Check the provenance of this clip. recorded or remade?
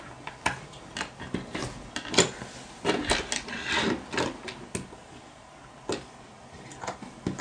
recorded